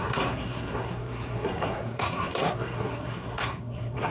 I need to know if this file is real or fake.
fake